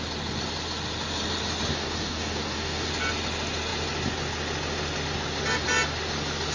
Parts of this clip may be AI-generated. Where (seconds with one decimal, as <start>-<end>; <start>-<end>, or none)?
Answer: 1.7-2.9